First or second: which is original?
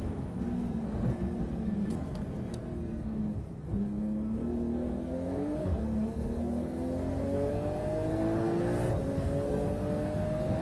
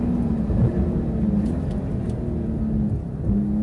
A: second